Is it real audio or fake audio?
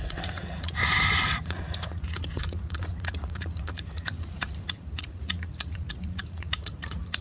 fake